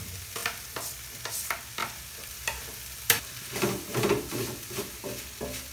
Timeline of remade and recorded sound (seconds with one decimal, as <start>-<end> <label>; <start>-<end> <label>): 0.0-0.4 recorded; 0.4-1.2 remade; 1.2-1.8 recorded; 1.8-5.2 remade; 5.2-5.7 recorded